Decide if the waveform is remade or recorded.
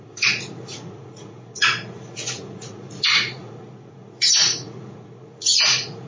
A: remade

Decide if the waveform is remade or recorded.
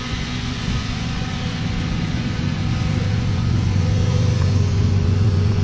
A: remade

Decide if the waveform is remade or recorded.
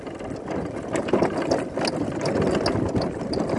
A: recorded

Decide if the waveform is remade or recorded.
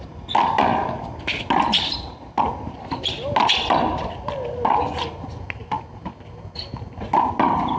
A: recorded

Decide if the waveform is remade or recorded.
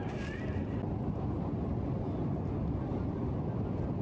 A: recorded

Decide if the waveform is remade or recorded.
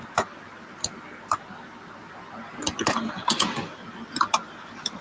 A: recorded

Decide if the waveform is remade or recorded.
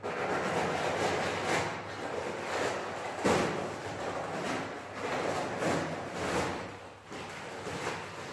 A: recorded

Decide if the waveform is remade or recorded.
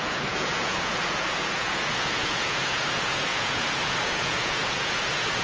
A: remade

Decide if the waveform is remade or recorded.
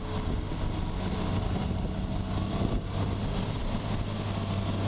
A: recorded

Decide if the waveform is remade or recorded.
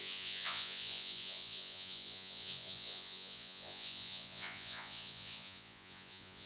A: remade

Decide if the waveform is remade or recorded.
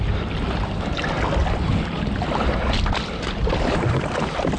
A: recorded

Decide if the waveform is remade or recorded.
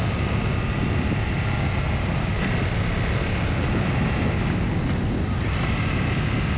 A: recorded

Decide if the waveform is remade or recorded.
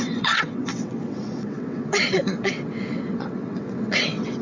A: remade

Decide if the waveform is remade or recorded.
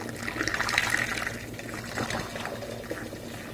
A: recorded